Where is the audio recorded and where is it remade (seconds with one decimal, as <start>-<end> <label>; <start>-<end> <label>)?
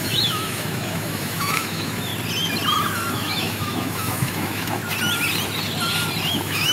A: 0.0-2.1 remade; 2.1-3.1 recorded; 3.1-4.8 remade; 4.8-6.3 recorded; 6.3-6.7 remade